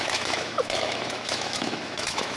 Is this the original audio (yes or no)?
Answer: no